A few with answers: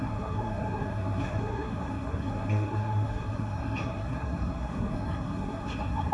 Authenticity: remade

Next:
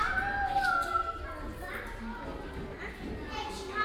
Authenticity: recorded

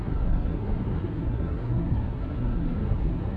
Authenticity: remade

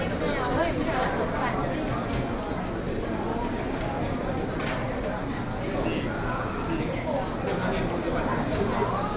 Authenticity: recorded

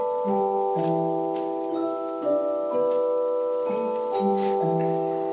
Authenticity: recorded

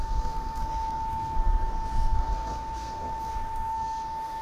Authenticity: remade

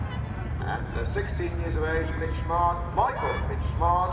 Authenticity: recorded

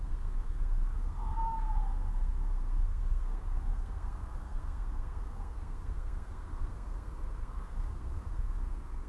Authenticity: remade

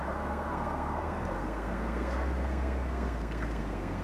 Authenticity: remade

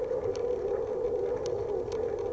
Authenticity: recorded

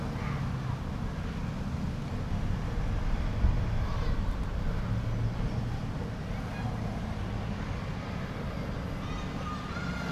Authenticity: recorded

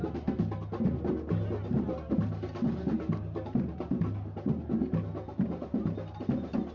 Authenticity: recorded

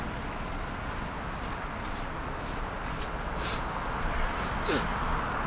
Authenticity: recorded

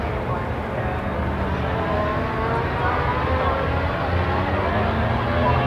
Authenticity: recorded